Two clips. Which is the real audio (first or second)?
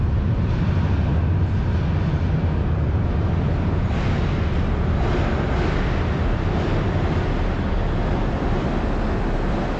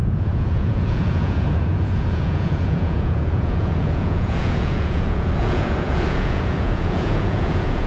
first